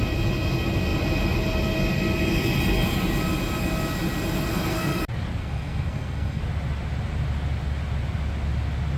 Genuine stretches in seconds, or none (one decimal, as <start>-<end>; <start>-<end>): 0.0-4.5; 5.0-5.4; 6.4-9.0